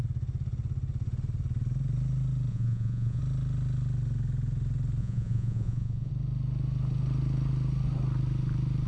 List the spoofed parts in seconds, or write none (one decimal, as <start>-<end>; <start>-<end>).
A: 2.5-3.2; 5.0-6.1